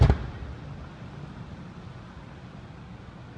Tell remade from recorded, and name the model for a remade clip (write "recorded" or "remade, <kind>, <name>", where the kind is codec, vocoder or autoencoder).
recorded